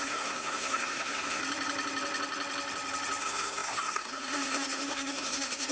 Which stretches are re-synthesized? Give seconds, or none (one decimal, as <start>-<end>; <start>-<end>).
0.0-1.4; 3.2-5.7